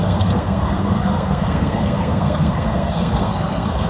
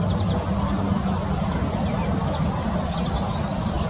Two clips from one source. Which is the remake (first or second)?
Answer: first